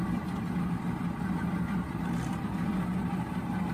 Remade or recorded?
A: recorded